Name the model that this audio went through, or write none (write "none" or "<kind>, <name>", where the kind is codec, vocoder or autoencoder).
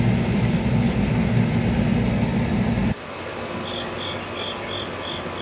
none